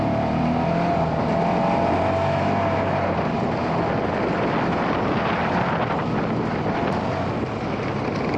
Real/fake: real